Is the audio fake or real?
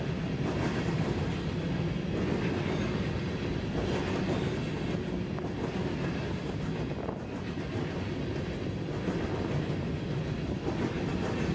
real